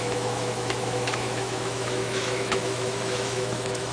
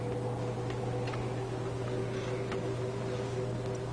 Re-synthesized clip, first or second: first